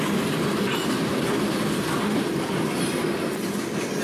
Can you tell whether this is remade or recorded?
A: recorded